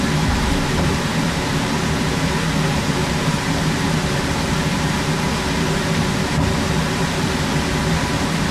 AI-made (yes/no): yes